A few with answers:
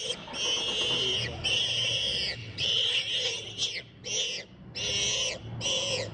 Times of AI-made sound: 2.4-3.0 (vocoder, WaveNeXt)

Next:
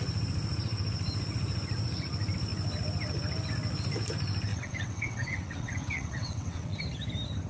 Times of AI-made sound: 4.5-6.8 (vocoder, WaveNeXt)

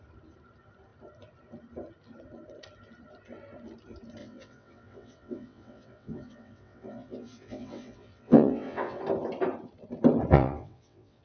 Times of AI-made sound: 4.2-9.0 (vocoder, WaveNeXt); 10.3-11.2